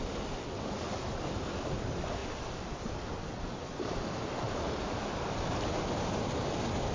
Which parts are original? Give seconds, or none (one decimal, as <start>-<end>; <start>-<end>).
0.0-6.9